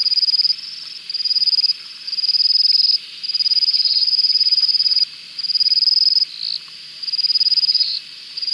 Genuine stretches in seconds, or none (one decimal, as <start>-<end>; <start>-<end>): 0.0-3.7; 5.0-7.7